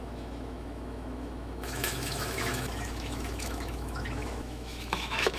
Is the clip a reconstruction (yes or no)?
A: yes